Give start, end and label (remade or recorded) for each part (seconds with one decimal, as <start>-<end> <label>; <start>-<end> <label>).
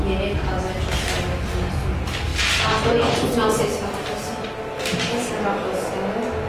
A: 0.0-6.5 recorded